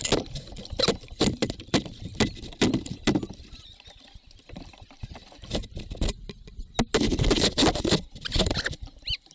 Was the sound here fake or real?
real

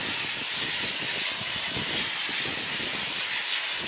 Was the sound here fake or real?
real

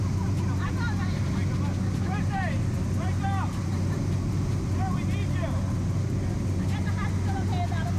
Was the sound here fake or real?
real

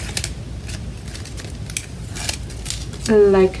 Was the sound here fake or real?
real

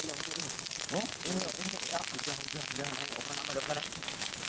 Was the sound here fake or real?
fake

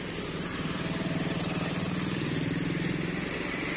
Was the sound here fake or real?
real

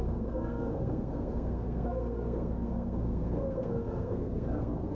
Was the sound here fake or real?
fake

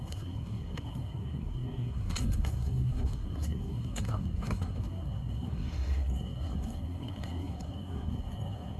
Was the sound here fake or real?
fake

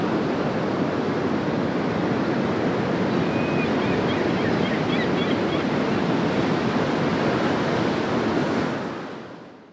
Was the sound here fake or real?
real